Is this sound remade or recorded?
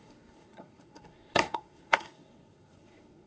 remade